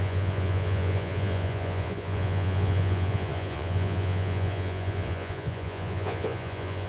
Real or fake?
fake